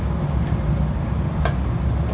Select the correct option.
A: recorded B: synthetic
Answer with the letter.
A